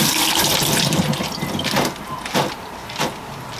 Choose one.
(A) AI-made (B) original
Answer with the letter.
B